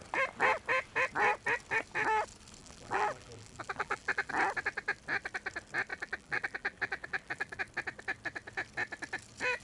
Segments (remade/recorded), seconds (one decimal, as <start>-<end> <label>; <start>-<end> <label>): 0.0-2.6 recorded; 2.6-4.3 remade; 4.3-5.9 recorded; 5.9-7.6 remade; 7.6-9.6 recorded